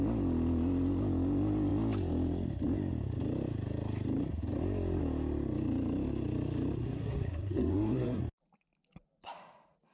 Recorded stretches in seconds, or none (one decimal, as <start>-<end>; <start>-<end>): 0.0-6.8; 8.2-9.9